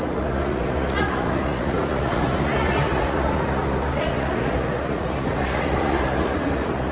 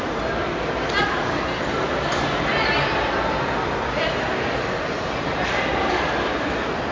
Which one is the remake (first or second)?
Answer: first